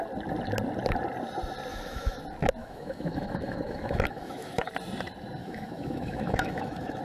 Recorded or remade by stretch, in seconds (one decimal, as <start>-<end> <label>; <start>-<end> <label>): 0.0-1.7 recorded; 1.7-2.2 remade; 2.2-2.6 recorded; 2.6-4.7 remade; 4.7-5.4 recorded; 5.4-7.0 remade